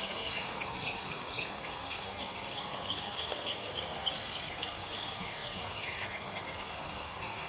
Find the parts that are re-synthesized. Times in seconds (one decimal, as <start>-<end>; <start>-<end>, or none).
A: 0.0-7.5